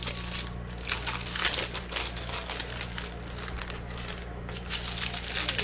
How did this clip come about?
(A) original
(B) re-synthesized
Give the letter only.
A